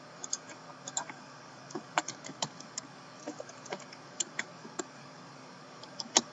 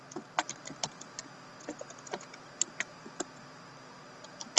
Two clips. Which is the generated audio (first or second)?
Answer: first